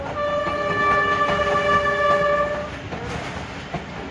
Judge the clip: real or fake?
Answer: real